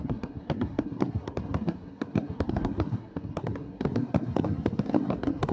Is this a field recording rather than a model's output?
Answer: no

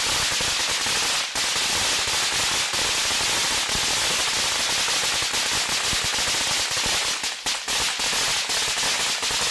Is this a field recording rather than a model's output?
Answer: yes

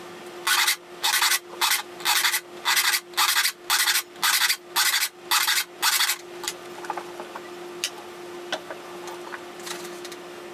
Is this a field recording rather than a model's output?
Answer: yes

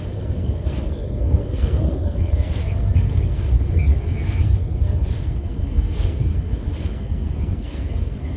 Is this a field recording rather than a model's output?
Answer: no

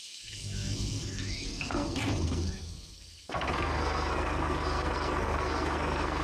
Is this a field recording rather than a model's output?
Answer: no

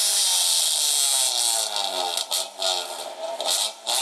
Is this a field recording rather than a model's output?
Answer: yes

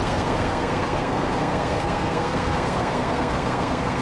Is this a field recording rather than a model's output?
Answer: no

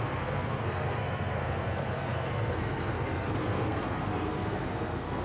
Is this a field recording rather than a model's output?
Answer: no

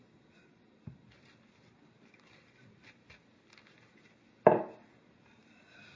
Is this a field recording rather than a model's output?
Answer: yes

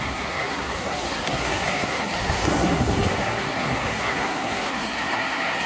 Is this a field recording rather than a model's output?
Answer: no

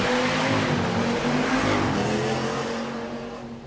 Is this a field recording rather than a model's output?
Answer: yes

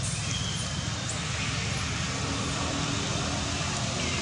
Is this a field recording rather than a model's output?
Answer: yes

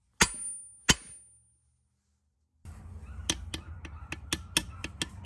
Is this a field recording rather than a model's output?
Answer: yes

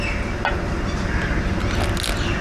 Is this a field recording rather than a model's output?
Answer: yes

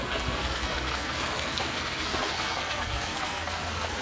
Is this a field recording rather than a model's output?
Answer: no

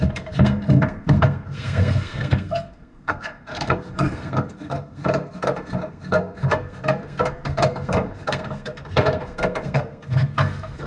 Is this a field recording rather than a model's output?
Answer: no